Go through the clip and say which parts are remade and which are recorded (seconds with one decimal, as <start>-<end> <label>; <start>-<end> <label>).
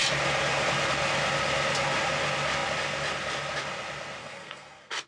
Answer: 0.0-4.2 recorded; 4.2-5.1 remade